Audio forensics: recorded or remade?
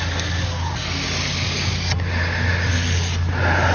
recorded